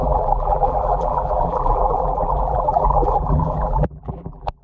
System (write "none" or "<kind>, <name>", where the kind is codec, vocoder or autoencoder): vocoder, BigVGAN v2